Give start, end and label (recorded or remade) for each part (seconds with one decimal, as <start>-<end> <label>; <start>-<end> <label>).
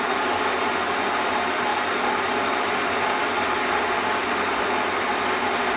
0.0-5.8 recorded